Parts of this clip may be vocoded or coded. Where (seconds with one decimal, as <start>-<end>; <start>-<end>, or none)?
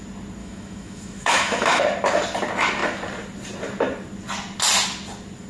0.4-1.8